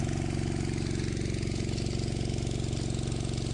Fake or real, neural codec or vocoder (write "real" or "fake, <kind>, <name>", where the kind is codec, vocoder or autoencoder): real